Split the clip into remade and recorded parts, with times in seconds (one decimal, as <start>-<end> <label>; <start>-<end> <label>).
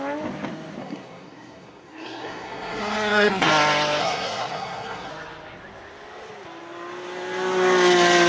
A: 0.0-0.8 recorded; 0.8-3.5 remade; 3.5-4.0 recorded; 4.0-5.1 remade; 5.1-8.3 recorded